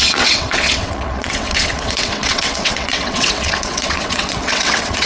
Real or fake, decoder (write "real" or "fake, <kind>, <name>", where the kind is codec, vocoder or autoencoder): fake, vocoder, WaveNeXt